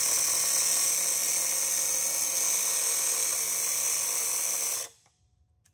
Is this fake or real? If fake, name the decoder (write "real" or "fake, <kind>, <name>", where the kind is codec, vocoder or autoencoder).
real